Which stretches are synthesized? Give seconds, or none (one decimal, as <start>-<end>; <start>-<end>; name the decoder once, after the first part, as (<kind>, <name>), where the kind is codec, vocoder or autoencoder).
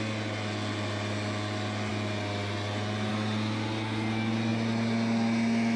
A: none